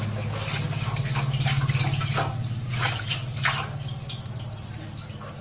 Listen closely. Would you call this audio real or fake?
real